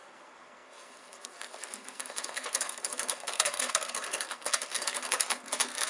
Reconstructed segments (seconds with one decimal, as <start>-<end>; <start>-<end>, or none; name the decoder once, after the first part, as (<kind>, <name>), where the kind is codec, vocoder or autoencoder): 0.0-5.9 (codec, SNAC)